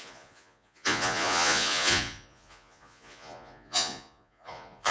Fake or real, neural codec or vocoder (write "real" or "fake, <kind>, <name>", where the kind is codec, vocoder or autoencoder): fake, vocoder, Vocos